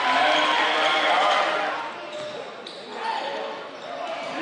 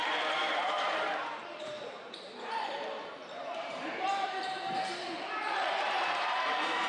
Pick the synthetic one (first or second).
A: second